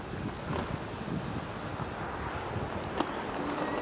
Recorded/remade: recorded